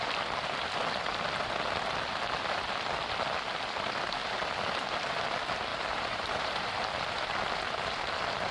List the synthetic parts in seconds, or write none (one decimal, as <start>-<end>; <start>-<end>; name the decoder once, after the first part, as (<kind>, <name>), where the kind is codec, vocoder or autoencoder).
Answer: 4.2-5.2 (vocoder, BigVGAN v2); 5.7-7.0

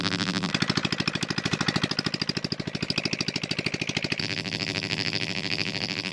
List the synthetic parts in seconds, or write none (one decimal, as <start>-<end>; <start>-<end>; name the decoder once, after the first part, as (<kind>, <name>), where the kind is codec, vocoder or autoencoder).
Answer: 0.0-0.5 (vocoder, BigVGAN v2); 4.2-6.1

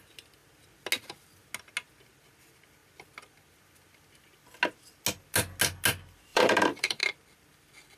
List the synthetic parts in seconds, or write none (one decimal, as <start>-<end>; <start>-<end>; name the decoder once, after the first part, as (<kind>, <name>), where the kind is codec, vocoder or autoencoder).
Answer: 6.3-7.0 (vocoder, BigVGAN v2)

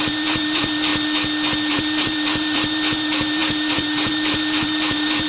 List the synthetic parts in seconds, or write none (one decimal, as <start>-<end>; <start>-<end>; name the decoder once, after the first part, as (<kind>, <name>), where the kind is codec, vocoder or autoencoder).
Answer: 0.0-0.9 (vocoder, BigVGAN v2); 1.7-5.3